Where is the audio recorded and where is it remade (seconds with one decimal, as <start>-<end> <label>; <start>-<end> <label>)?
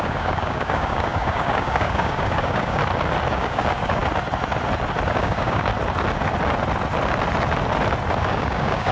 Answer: 0.0-2.8 remade; 2.8-3.3 recorded; 3.3-4.0 remade; 4.0-5.2 recorded; 5.2-5.7 remade; 5.7-8.2 recorded; 8.2-8.9 remade